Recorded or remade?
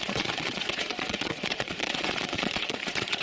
remade